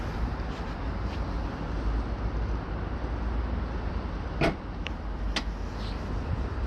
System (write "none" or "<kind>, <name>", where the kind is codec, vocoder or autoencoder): none